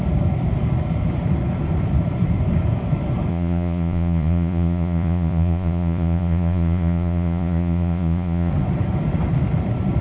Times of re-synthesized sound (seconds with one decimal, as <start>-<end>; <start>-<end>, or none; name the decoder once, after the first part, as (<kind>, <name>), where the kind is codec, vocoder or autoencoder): 3.3-8.5 (vocoder, Vocos)